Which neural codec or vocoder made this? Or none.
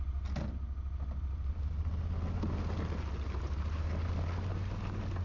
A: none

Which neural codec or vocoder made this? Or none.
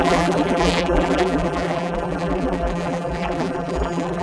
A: vocoder, BigVGAN v2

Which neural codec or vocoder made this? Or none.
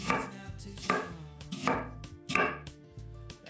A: autoencoder, DAC-VAE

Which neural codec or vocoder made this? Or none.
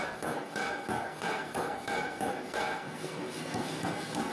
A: codec, SNAC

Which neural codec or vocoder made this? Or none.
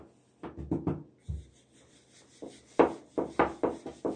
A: none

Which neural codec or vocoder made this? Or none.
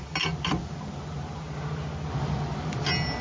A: none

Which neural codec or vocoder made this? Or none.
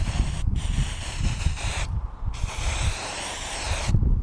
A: vocoder, BigVGAN v2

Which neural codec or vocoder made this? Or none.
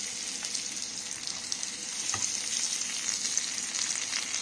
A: none